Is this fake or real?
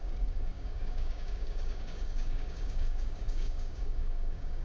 fake